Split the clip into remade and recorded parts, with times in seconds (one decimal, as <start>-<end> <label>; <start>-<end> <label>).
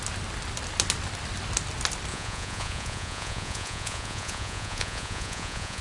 0.0-2.1 recorded; 2.1-5.8 remade